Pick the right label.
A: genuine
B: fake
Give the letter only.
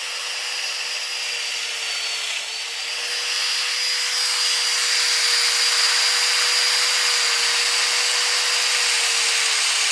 A